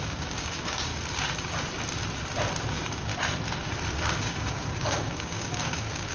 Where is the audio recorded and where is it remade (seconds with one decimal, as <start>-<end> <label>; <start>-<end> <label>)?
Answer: 0.0-0.9 remade; 0.9-2.7 recorded; 2.7-3.1 remade; 3.1-4.2 recorded; 4.2-6.1 remade